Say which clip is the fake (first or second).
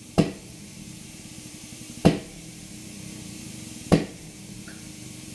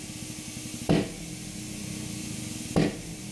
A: first